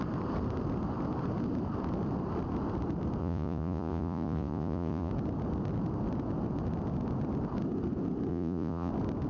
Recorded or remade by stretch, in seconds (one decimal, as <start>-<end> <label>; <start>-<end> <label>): 0.0-3.2 recorded; 3.2-5.1 remade; 5.1-8.3 recorded; 8.3-8.9 remade; 8.9-9.3 recorded